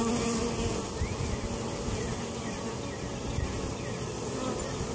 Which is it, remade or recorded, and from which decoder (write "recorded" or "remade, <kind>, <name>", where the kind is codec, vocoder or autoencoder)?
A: recorded